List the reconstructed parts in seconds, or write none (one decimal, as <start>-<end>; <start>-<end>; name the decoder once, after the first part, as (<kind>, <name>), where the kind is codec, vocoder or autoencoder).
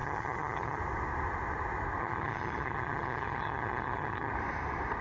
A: 0.0-0.8 (vocoder, HiFi-GAN); 2.0-4.3